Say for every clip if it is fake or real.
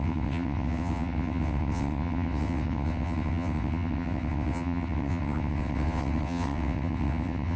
fake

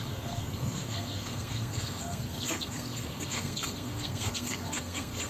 fake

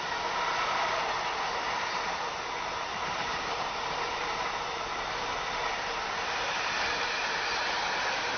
real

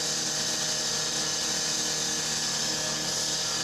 real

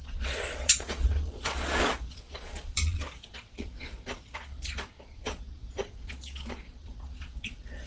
fake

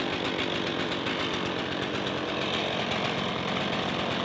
real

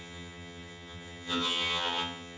fake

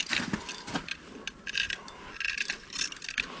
real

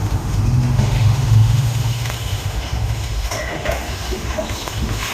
fake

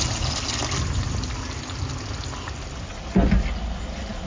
real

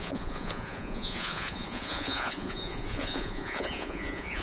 fake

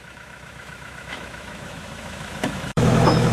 fake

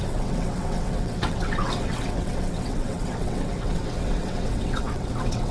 fake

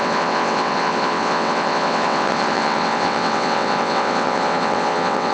fake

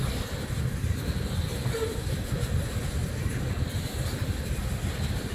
real